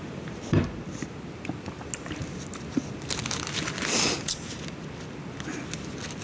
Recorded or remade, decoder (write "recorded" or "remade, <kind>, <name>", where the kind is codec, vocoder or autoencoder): recorded